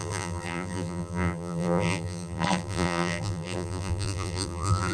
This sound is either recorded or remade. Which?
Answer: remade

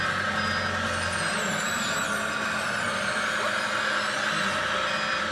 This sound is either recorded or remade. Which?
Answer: recorded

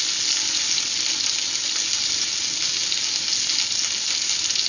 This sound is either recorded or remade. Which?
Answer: recorded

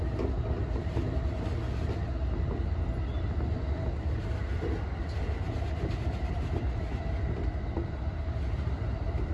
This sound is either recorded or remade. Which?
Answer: recorded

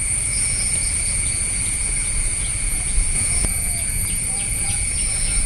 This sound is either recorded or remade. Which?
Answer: remade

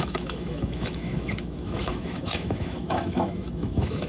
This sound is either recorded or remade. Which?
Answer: remade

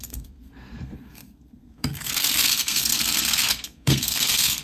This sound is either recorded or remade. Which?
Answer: remade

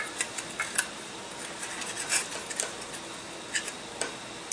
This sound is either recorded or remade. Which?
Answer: recorded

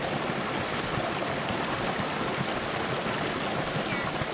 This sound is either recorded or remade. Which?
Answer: recorded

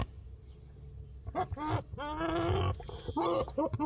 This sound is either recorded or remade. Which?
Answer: recorded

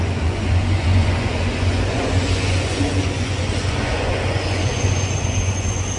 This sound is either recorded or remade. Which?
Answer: remade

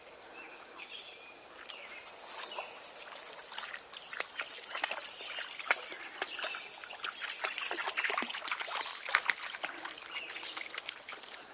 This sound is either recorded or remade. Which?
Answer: recorded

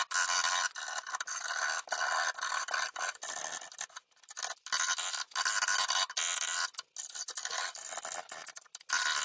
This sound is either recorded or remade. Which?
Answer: recorded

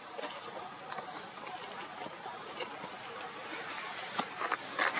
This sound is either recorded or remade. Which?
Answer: recorded